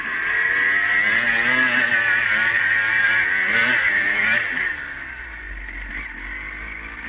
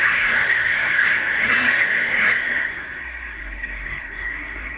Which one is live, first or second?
first